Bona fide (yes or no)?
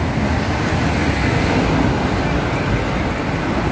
yes